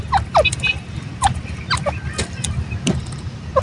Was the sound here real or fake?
real